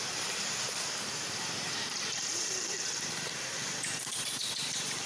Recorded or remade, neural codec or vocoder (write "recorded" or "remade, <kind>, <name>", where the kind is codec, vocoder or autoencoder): remade, vocoder, BigVGAN v2